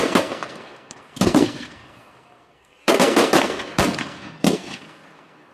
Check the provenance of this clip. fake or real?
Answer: fake